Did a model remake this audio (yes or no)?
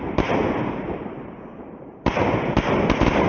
no